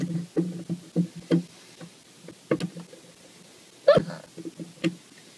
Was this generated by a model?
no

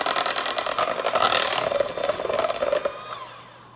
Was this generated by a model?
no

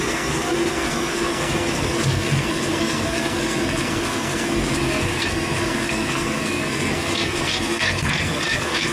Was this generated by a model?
yes